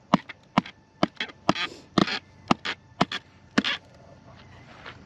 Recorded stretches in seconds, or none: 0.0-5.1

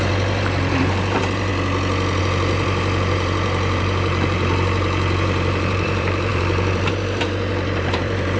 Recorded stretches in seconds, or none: 1.5-2.2

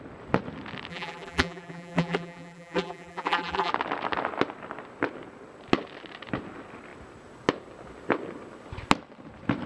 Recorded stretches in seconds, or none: 0.0-0.9; 3.7-9.7